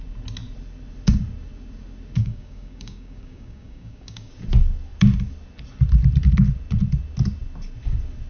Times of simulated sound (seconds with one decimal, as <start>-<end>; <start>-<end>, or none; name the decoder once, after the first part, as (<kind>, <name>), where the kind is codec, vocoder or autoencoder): 2.2-4.3 (codec, DAC)